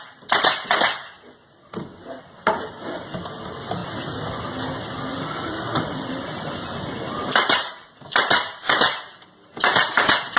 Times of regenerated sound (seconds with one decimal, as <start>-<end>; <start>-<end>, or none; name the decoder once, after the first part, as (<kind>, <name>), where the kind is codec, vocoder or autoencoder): 5.1-8.8 (vocoder, BigVGAN v2)